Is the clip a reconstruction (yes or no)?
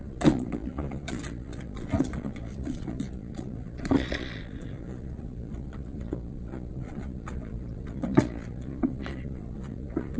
yes